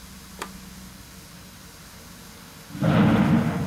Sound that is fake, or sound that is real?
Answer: real